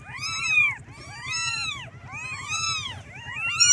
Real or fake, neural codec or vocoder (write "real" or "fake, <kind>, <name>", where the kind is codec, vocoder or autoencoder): real